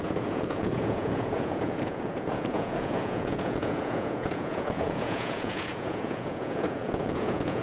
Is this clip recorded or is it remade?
remade